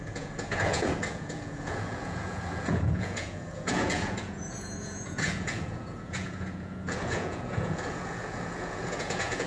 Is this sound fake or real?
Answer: fake